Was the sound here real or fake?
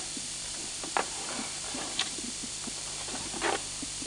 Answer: fake